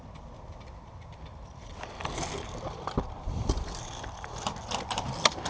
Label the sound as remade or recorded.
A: remade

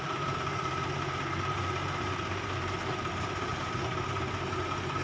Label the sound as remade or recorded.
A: remade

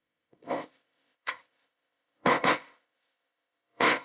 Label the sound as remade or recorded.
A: remade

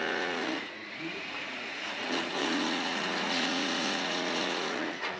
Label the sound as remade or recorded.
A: remade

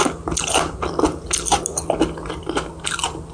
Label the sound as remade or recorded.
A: recorded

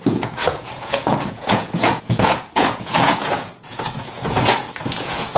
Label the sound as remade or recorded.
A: remade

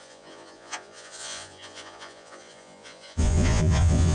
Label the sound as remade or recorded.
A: remade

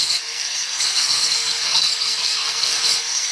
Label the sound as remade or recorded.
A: remade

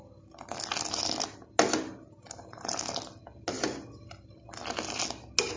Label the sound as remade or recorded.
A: recorded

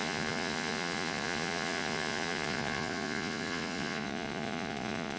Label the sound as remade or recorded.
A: remade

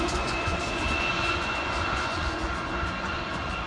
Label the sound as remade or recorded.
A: remade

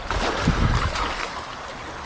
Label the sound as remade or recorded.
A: recorded